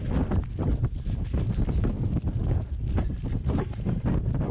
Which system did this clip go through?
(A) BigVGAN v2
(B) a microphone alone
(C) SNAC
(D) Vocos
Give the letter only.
B